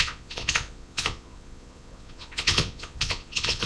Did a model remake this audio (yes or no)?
yes